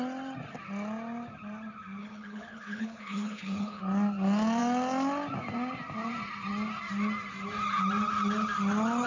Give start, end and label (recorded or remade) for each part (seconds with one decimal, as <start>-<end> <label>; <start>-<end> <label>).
0.0-2.0 recorded; 2.0-3.8 remade; 3.8-9.1 recorded